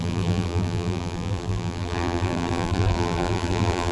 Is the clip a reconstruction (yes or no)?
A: yes